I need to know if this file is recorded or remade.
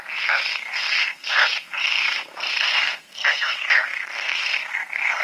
remade